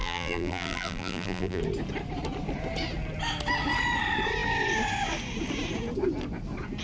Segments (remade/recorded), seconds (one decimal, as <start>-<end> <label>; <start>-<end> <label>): 0.0-1.6 remade; 1.6-6.8 recorded